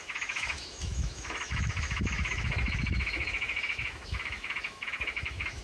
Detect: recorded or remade remade